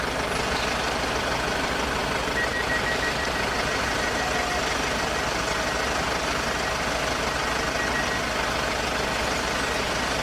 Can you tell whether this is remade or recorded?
recorded